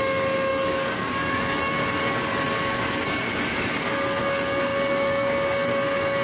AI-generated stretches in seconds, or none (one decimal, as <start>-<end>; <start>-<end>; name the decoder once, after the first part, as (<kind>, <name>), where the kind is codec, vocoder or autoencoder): 0.0-6.2 (codec, DAC)